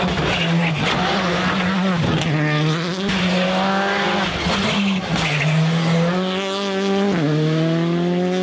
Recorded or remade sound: recorded